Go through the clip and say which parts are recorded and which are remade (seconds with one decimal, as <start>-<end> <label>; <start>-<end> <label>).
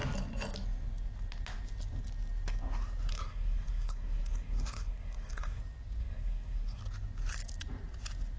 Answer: 0.0-3.1 recorded; 3.1-5.6 remade; 5.6-6.0 recorded; 6.0-6.8 remade; 6.8-8.4 recorded